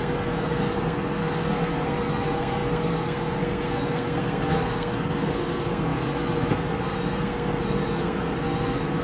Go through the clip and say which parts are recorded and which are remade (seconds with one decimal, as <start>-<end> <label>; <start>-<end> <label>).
0.0-9.0 remade